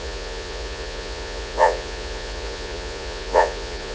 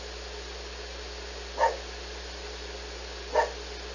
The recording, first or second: second